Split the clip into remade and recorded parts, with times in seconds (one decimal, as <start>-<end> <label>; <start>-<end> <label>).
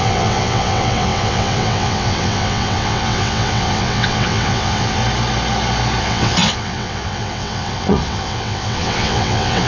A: 0.0-5.0 remade; 5.0-6.0 recorded; 6.0-9.7 remade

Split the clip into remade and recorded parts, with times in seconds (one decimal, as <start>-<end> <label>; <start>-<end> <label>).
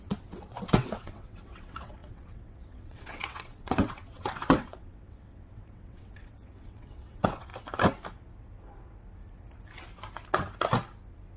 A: 0.0-7.5 remade; 7.5-11.4 recorded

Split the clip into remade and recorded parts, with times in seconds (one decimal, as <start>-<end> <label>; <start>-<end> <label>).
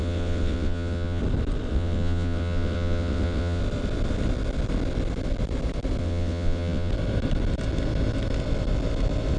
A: 0.0-1.2 remade; 1.2-1.7 recorded; 1.7-3.6 remade; 3.6-6.0 recorded; 6.0-6.9 remade; 6.9-9.4 recorded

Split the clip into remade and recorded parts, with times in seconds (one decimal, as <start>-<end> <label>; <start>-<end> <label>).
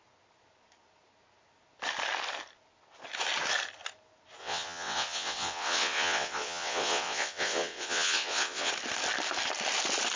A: 0.0-4.4 recorded; 4.4-8.7 remade; 8.7-10.2 recorded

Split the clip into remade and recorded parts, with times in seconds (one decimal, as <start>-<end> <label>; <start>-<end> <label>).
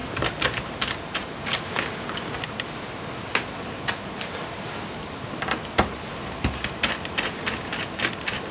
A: 0.0-8.5 recorded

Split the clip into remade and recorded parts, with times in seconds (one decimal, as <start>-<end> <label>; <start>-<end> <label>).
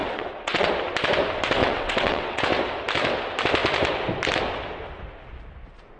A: 0.0-0.7 remade; 0.7-1.6 recorded; 1.6-2.4 remade; 2.4-6.0 recorded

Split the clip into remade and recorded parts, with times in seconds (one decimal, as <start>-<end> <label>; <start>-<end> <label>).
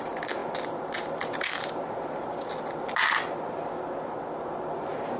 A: 0.0-5.2 recorded